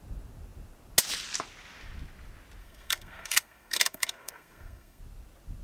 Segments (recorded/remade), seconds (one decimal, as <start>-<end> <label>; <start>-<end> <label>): 0.0-2.6 recorded; 2.6-5.0 remade; 5.0-5.6 recorded